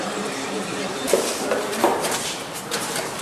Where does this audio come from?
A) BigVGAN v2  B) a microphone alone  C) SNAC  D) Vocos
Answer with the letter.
A